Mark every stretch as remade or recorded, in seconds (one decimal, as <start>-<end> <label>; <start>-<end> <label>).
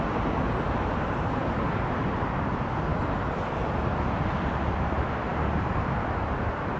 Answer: 0.0-6.8 recorded